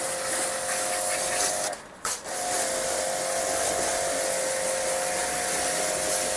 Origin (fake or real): real